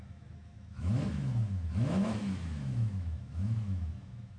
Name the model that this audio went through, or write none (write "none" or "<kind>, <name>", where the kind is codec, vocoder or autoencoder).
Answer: autoencoder, DAC-VAE